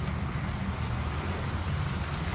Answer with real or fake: real